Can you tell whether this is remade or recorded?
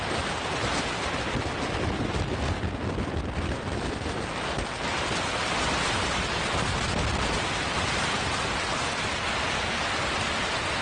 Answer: recorded